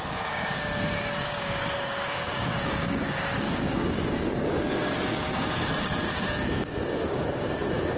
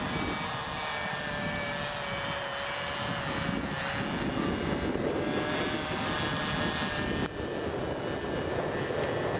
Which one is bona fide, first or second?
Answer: second